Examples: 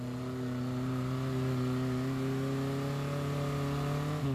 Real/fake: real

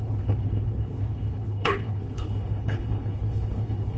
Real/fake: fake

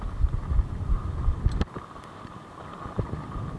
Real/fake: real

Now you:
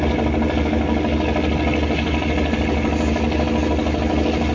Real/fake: real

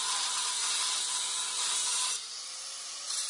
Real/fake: fake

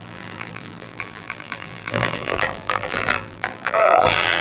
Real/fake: fake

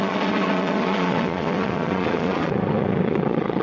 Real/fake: fake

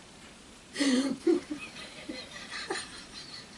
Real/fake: fake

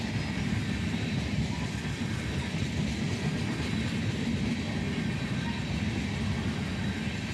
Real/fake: real